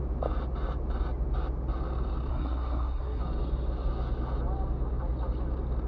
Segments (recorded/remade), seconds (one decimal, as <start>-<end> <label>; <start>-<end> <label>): 0.0-2.3 recorded; 2.3-3.2 remade; 3.2-5.9 recorded